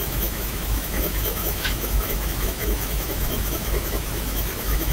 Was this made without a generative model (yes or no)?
no